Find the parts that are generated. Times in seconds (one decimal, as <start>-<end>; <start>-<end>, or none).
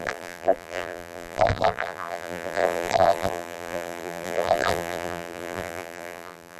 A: 0.0-6.6